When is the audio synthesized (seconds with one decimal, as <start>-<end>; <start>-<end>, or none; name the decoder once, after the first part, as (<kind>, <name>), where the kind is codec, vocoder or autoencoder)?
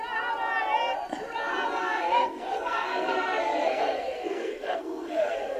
1.8-5.6 (codec, SNAC)